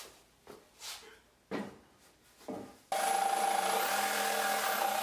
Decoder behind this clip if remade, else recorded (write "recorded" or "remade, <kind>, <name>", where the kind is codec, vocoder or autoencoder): recorded